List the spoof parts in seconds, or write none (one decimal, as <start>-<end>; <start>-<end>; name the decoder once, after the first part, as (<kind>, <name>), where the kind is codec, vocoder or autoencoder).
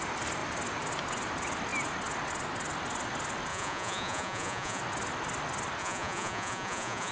3.5-4.8 (vocoder, Vocos); 5.8-7.1